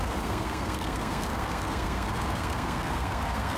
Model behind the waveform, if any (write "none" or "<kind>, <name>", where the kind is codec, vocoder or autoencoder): codec, SNAC